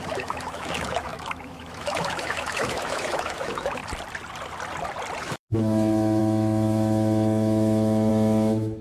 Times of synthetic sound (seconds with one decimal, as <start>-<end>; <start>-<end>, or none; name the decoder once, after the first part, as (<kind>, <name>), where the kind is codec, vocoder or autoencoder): 0.0-3.8 (autoencoder, DAC-VAE); 5.2-8.8